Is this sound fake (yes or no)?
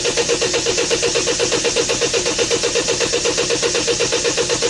no